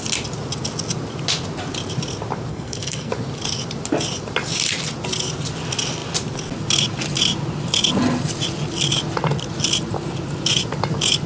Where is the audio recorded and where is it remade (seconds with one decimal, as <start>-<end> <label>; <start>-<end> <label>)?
0.0-2.5 recorded; 2.5-3.1 remade; 3.1-11.3 recorded